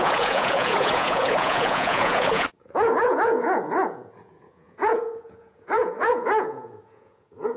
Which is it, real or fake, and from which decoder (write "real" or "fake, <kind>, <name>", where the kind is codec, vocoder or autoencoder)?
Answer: fake, vocoder, Vocos